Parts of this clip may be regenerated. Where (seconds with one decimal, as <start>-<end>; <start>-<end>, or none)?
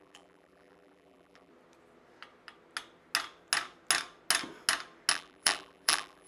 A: 0.0-1.5; 5.1-6.3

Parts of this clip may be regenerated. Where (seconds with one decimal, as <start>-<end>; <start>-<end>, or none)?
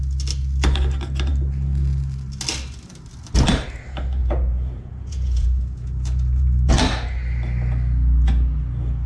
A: 4.2-6.7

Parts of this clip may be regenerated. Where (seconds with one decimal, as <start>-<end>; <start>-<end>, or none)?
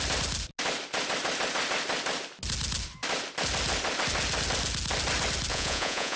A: 5.5-6.2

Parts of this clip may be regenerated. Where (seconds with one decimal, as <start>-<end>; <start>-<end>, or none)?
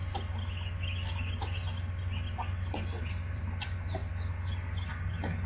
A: 3.0-4.0